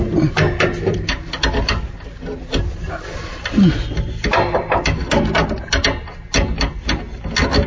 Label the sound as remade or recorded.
recorded